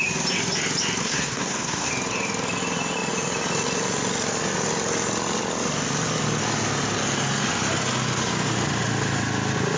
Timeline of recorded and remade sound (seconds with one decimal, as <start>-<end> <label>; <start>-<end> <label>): 0.0-1.0 recorded; 1.0-1.9 remade; 1.9-9.8 recorded